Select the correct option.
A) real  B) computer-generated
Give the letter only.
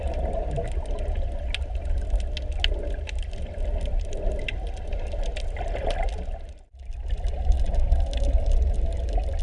A